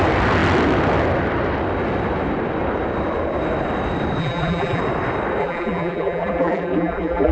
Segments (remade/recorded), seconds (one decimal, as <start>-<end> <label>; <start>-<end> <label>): 0.0-4.2 recorded; 4.2-4.8 remade; 4.8-5.4 recorded; 5.4-7.3 remade